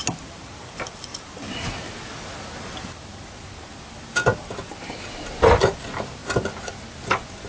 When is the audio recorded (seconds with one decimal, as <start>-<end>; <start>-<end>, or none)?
0.0-7.5